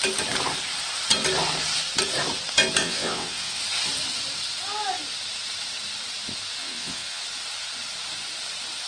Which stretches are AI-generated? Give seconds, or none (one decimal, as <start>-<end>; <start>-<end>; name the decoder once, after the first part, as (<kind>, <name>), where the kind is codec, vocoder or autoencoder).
2.8-3.6 (vocoder, WaveNeXt); 6.6-7.2